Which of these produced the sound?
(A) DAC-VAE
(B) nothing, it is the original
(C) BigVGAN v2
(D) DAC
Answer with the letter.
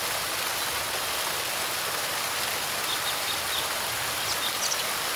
B